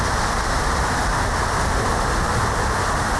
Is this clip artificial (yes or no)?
no